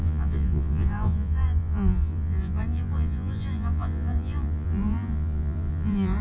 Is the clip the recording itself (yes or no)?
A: no